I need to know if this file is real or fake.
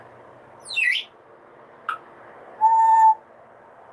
real